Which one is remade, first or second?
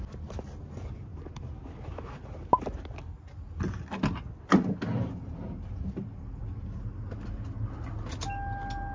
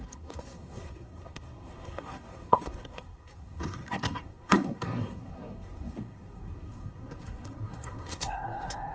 second